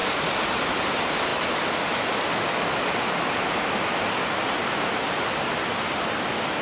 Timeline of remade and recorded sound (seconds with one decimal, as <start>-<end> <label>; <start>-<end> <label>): 0.0-0.5 recorded; 0.5-1.3 remade; 1.3-4.7 recorded; 4.7-6.6 remade